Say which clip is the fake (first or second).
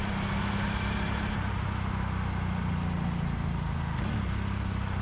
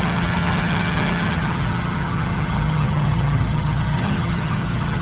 second